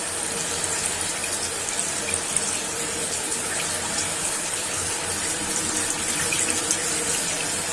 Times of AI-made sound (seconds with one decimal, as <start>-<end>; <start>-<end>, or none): 3.0-3.6; 4.1-4.9